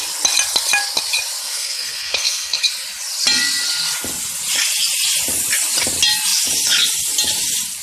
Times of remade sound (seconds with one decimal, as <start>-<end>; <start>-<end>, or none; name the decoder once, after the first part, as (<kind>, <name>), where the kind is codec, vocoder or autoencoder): 1.4-2.6 (codec, SNAC)